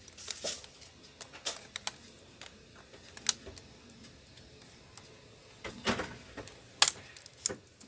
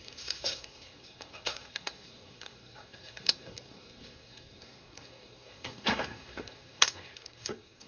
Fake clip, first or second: second